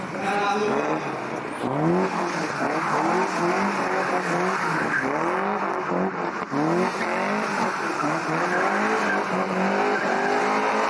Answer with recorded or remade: recorded